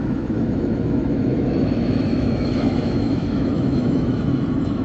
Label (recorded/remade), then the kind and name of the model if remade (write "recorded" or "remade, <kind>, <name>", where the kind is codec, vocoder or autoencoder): remade, autoencoder, DAC-VAE